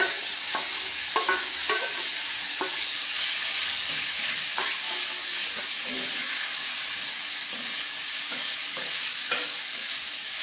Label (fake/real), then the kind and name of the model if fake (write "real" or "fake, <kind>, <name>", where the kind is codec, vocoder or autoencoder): fake, codec, DAC